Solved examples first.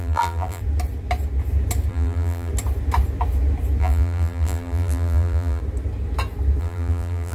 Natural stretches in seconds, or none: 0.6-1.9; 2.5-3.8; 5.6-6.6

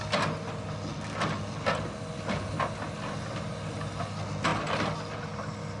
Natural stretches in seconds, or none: 0.0-5.8

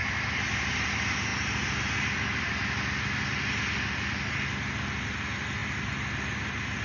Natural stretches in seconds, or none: 0.0-6.8

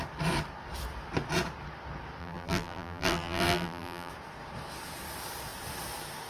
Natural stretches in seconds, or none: 0.0-2.2; 4.1-6.3

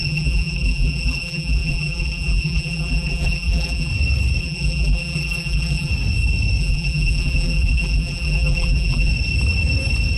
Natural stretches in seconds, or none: 3.9-4.4; 5.9-6.6; 9.1-10.2